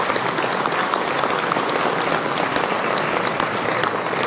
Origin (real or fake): real